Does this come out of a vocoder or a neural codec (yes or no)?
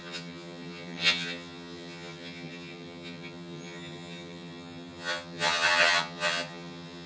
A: yes